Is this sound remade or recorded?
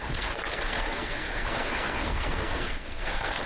remade